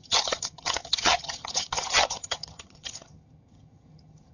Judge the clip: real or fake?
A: fake